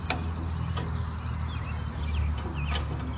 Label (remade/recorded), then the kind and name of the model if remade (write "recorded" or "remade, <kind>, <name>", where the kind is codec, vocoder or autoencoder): recorded